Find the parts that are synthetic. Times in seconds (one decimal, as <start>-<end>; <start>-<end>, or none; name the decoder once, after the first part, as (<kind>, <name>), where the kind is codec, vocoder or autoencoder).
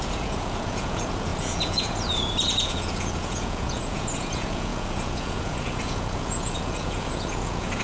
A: 0.0-7.8 (vocoder, Vocos)